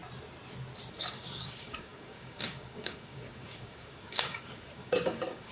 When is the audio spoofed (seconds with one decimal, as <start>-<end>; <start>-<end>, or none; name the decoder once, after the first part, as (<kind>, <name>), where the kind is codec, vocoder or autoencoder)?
0.9-5.5 (codec, DAC)